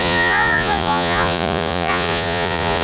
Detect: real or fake fake